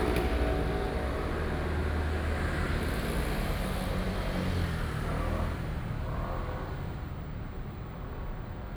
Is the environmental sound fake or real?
real